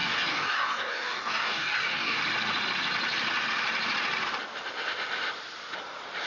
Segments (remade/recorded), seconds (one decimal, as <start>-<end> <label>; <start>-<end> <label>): 0.0-2.2 remade; 2.2-6.3 recorded